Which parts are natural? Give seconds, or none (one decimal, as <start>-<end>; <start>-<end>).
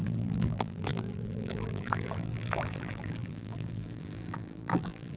none